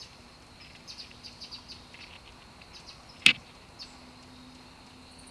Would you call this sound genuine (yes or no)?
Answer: yes